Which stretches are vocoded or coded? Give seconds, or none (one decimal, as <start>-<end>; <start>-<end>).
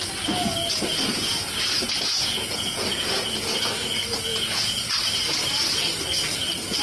0.9-3.6; 4.3-4.9